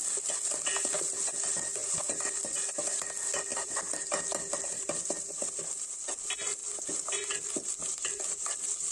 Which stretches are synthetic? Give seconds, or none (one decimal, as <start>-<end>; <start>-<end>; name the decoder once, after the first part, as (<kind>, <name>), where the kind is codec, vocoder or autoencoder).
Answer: 3.5-6.1 (vocoder, BigVGAN v2)